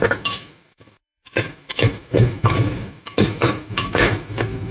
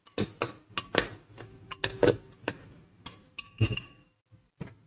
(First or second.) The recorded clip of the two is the second